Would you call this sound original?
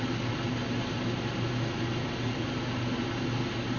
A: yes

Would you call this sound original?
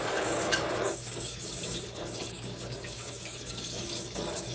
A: no